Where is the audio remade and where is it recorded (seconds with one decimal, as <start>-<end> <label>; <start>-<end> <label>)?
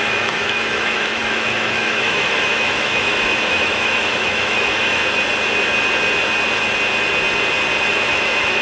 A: 0.0-5.0 remade; 5.0-7.9 recorded; 7.9-8.6 remade